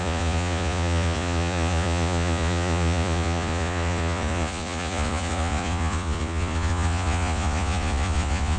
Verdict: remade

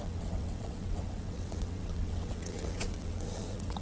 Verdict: remade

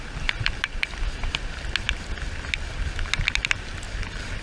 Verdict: recorded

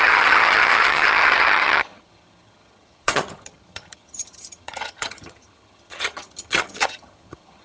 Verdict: remade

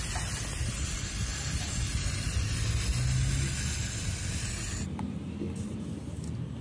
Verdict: recorded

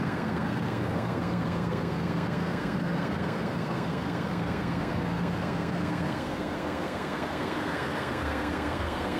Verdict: remade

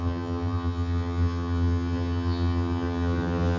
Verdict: remade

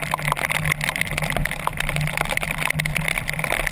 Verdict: recorded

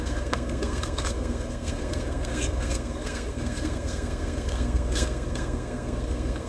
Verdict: remade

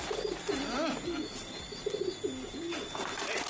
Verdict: recorded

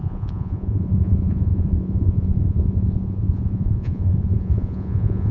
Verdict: remade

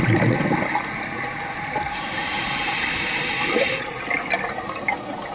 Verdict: recorded